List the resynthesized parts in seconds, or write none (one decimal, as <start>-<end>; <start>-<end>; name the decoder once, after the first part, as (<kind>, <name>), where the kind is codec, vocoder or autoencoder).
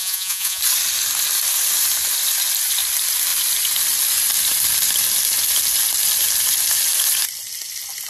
0.0-0.6 (vocoder, Vocos)